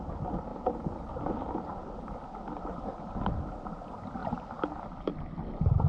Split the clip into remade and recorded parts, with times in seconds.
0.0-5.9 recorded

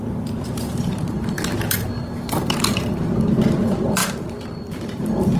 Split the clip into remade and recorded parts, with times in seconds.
0.0-5.4 remade

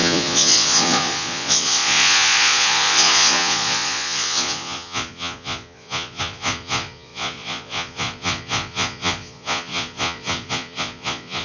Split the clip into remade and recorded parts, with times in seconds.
0.0-11.4 remade

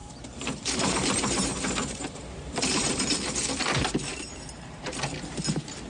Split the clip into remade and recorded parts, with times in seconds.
0.0-3.0 remade; 3.0-4.1 recorded; 4.1-5.0 remade; 5.0-5.9 recorded

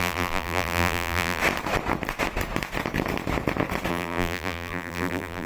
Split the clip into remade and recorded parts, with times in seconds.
0.0-1.4 remade; 1.4-3.9 recorded; 3.9-5.5 remade